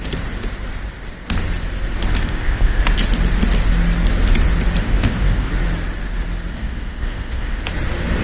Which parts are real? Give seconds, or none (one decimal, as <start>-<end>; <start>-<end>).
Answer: 0.0-2.2; 2.8-4.8; 5.5-6.5; 7.6-8.2